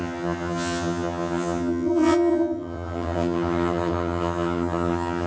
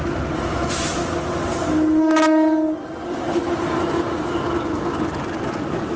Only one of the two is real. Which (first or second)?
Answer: second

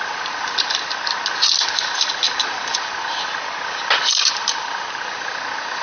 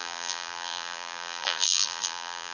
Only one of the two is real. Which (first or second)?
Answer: first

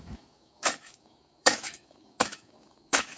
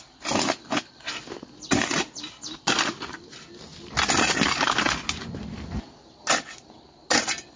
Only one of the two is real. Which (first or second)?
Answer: second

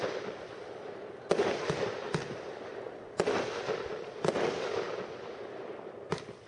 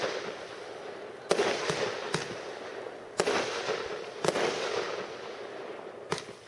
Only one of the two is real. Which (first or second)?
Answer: second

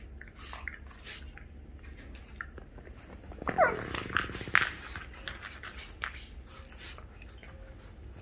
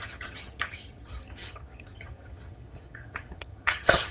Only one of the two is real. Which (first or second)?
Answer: first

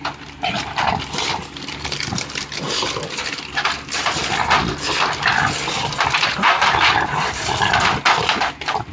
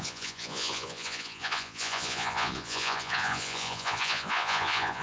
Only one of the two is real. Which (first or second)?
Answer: first